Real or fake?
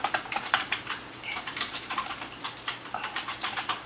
fake